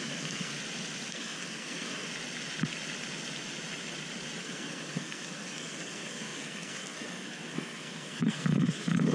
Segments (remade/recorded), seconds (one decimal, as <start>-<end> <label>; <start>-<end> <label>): 0.0-0.5 remade; 0.5-1.1 recorded; 1.1-2.1 remade; 2.1-4.4 recorded; 4.4-9.1 remade